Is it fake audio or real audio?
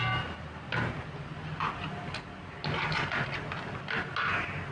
real